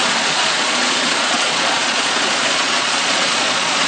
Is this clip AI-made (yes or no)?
yes